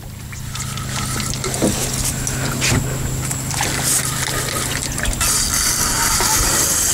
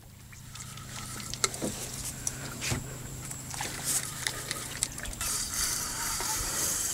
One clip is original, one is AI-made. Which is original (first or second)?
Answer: first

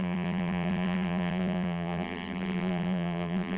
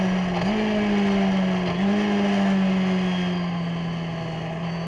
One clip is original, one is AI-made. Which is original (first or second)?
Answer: second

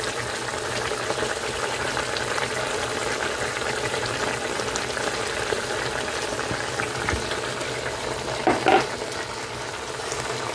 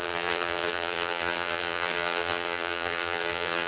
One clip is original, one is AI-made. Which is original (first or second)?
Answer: first